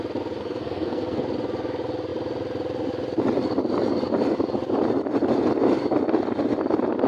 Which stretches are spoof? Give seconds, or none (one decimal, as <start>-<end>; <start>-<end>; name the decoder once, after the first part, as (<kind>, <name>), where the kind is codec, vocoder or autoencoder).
0.4-1.2 (codec, SNAC)